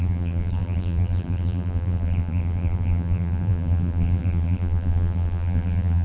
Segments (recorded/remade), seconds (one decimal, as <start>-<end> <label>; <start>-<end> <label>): 0.0-6.0 remade